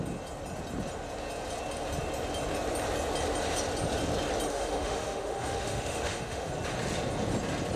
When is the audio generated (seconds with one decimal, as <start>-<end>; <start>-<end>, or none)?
4.5-6.5